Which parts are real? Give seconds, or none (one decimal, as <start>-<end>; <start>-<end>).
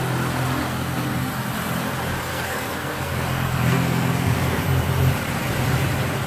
0.0-0.6; 1.3-2.3; 4.6-6.3